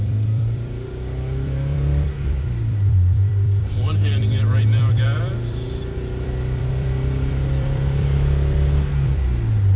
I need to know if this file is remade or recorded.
remade